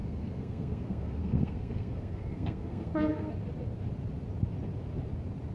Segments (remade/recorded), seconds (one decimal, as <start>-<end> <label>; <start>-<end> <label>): 0.0-3.3 remade; 3.3-5.5 recorded